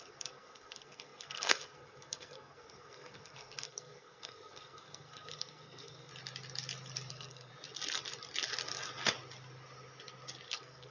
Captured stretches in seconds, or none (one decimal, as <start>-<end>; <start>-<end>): 6.1-7.1; 7.5-10.5